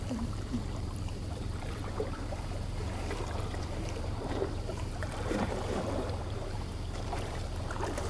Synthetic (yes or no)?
yes